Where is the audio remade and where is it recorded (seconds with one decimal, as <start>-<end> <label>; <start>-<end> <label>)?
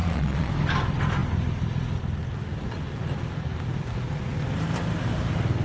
0.0-0.5 remade; 0.5-5.6 recorded